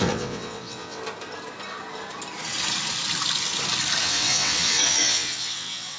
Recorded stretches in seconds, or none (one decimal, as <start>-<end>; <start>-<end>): 1.0-4.0